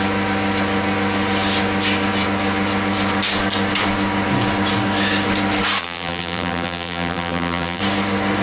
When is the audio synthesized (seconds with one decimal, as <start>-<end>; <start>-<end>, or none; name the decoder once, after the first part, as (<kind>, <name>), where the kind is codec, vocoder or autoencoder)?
5.8-7.8 (vocoder, BigVGAN v2)